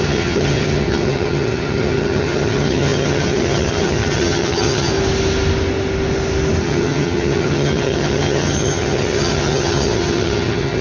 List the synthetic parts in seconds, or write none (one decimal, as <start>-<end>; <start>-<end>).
0.0-4.9; 6.6-10.8

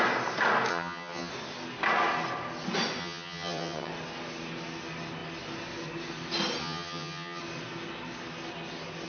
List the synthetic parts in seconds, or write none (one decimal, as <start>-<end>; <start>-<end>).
0.7-1.3; 3.0-3.9; 6.6-7.4

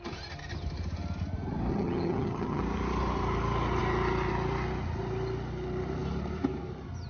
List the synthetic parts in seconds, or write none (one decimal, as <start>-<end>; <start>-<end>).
1.7-2.6

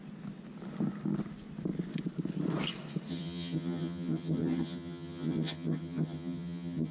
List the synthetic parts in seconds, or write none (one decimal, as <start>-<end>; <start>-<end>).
3.1-6.9